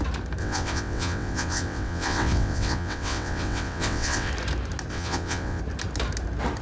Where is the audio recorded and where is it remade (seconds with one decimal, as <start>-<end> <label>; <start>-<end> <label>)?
0.0-0.4 recorded; 0.4-4.3 remade; 4.3-4.9 recorded; 4.9-5.6 remade; 5.6-6.6 recorded